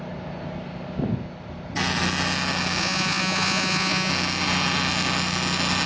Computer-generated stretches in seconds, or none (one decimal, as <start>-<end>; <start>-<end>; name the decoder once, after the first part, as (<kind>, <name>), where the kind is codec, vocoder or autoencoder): 2.8-4.1 (vocoder, Vocos)

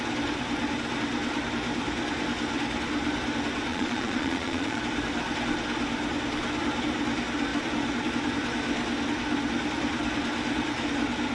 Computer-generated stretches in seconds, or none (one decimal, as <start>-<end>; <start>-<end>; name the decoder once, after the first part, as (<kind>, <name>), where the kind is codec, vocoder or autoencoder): 3.7-4.8 (vocoder, Vocos)

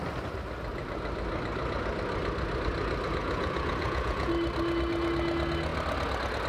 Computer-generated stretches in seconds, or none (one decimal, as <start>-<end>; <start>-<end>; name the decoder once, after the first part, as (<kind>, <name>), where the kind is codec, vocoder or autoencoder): 3.2-4.3 (vocoder, Vocos)

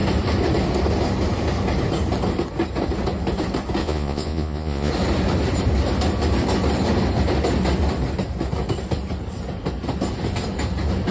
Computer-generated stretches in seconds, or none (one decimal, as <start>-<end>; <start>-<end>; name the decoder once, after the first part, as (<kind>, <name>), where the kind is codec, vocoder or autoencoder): 3.8-4.9 (vocoder, Vocos)

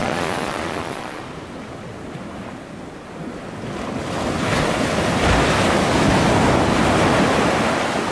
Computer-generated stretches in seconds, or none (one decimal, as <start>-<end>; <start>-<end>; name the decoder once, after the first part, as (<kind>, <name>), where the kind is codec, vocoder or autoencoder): 0.0-1.2 (vocoder, Vocos)

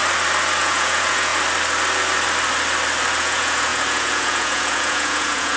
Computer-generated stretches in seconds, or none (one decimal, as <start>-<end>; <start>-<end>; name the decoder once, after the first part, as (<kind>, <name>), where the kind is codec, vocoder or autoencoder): 0.6-1.3 (vocoder, Vocos); 3.2-5.6

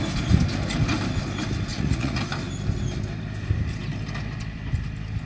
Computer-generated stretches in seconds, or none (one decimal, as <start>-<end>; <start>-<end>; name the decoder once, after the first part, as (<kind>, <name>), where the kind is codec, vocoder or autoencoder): 1.7-2.2 (vocoder, Vocos)